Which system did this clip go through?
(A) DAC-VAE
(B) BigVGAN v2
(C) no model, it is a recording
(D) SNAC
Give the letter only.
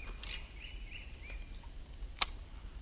C